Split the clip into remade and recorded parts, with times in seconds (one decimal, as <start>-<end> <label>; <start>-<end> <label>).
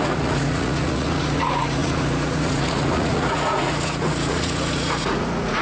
0.0-5.6 remade